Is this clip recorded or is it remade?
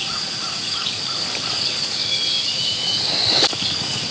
remade